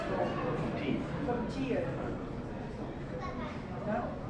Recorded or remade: recorded